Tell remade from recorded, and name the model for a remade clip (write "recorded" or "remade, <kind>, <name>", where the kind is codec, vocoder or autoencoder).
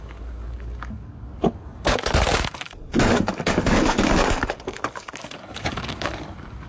remade, codec, DAC